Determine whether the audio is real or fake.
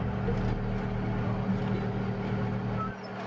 real